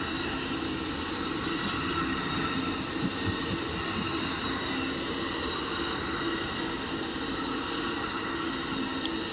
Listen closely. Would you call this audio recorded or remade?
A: recorded